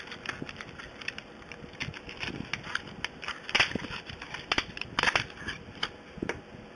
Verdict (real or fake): real